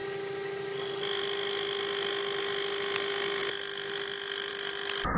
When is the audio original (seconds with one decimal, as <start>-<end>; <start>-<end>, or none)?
0.0-5.2